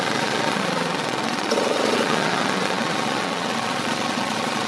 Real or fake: fake